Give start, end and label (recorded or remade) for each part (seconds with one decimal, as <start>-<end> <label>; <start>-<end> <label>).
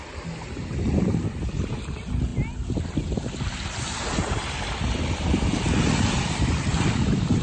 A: 0.0-7.4 recorded